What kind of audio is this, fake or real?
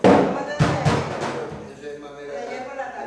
real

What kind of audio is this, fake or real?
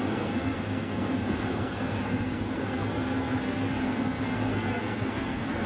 fake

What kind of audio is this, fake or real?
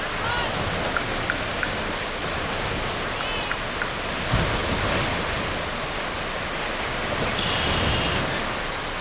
real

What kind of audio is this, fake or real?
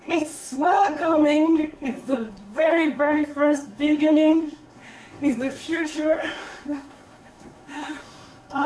fake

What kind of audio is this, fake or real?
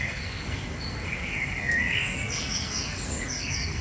fake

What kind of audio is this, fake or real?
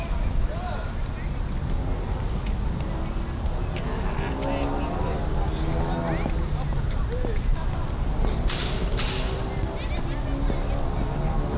real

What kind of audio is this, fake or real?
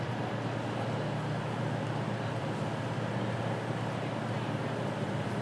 real